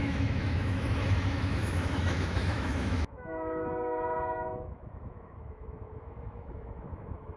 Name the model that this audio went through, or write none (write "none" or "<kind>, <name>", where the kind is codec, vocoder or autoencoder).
autoencoder, DAC-VAE